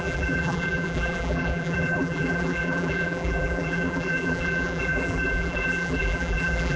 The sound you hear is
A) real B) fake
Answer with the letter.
B